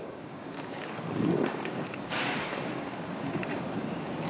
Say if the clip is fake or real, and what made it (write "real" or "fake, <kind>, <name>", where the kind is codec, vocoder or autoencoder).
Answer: fake, codec, DAC